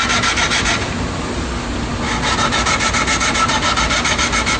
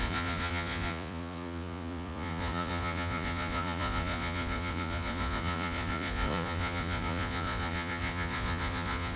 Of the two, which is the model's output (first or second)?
second